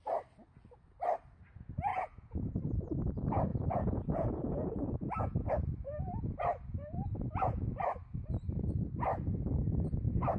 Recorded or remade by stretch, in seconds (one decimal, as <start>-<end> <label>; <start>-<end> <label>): 0.0-1.9 recorded; 1.9-2.5 remade; 2.5-3.5 recorded; 3.5-5.5 remade; 5.5-7.1 recorded; 7.1-7.8 remade; 7.8-10.4 recorded